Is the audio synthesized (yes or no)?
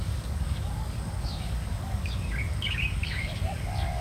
yes